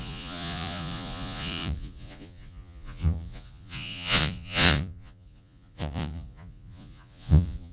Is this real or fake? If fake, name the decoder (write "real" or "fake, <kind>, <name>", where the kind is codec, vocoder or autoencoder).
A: fake, vocoder, Vocos